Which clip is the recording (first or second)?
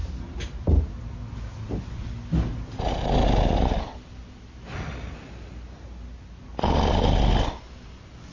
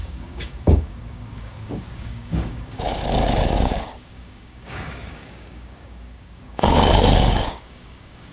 first